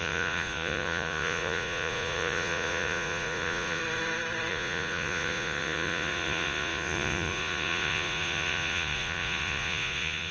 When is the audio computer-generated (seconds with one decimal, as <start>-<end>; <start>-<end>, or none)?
0.0-3.8; 4.5-10.3

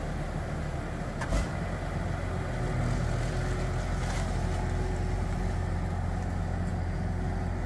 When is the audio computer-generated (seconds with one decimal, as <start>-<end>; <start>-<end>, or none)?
none

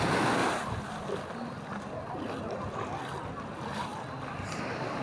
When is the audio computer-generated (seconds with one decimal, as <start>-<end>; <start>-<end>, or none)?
0.4-0.9

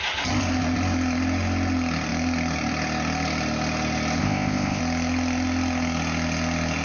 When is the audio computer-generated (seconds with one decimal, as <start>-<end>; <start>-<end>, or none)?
4.2-4.8

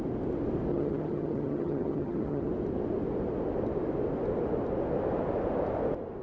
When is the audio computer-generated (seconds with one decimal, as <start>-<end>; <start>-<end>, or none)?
0.7-2.5

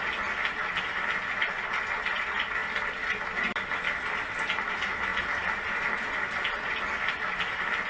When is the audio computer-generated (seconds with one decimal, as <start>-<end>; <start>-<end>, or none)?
none

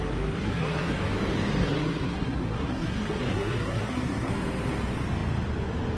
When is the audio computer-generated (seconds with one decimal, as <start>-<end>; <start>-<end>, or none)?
0.4-0.9; 1.6-4.3